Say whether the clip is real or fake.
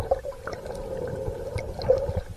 real